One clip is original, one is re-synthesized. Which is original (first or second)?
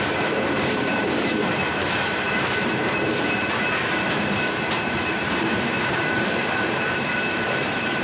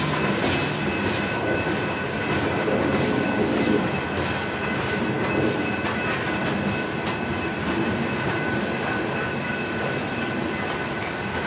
second